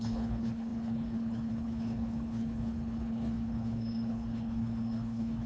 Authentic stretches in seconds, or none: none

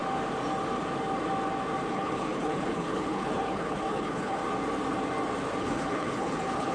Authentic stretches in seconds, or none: 0.0-1.9; 4.4-5.6

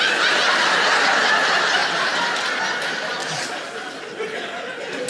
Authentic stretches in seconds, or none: 0.0-5.1

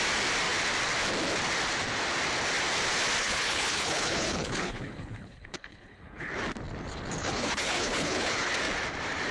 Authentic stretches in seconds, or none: 0.0-3.2; 6.3-7.2; 8.5-9.3

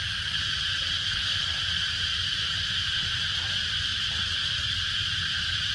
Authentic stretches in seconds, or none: 0.0-1.0; 1.5-5.7

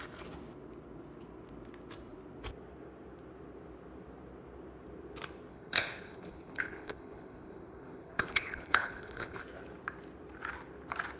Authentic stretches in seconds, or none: 0.0-5.5; 9.4-11.2

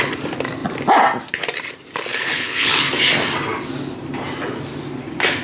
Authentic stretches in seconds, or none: 0.0-2.1; 2.8-5.4

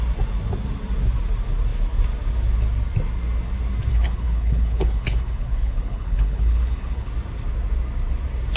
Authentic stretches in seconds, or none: 0.0-3.9; 7.1-8.6